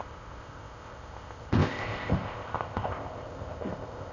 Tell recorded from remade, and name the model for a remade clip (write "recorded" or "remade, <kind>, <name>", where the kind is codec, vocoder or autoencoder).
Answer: remade, codec, ZipCodec